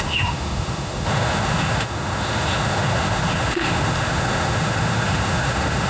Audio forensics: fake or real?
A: fake